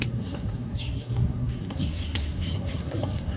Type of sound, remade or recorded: remade